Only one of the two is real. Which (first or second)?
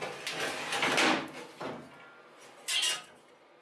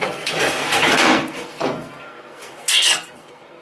first